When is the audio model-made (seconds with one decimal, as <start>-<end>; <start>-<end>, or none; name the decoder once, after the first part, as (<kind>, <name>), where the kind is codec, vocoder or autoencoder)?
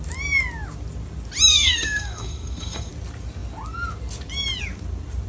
1.5-2.9 (codec, SNAC)